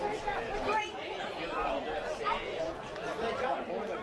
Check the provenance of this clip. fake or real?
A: real